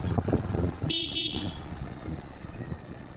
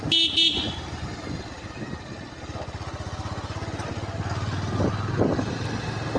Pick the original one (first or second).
second